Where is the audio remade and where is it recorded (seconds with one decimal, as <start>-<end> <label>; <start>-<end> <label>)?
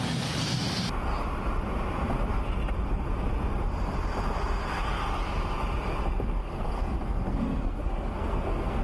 0.0-6.4 recorded; 6.4-8.8 remade